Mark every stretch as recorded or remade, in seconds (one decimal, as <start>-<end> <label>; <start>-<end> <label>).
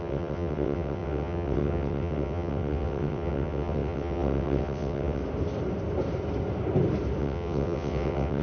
0.0-5.2 remade; 5.2-7.2 recorded; 7.2-8.4 remade